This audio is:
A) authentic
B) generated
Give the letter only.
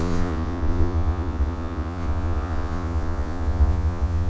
B